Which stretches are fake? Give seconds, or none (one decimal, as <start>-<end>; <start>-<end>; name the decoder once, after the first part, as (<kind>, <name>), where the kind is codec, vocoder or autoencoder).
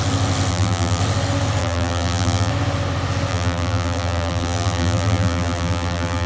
0.5-1.0 (vocoder, BigVGAN v2); 1.6-2.5; 3.3-6.3